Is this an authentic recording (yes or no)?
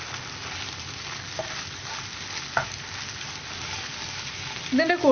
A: yes